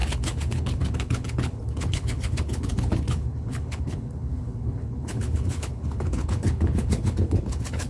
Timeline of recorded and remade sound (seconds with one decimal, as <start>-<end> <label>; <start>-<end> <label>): 0.0-7.9 remade